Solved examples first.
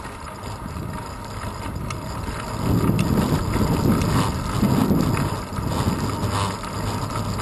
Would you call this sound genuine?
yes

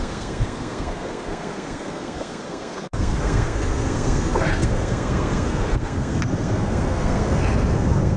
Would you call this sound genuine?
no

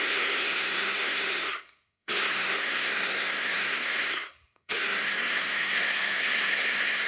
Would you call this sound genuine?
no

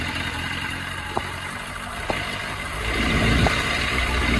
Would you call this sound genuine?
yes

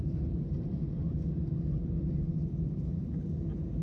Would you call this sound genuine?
yes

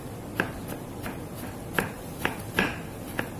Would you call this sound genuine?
yes